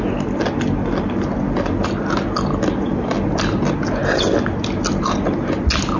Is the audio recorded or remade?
recorded